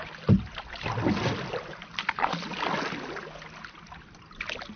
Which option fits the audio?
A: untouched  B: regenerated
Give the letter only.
A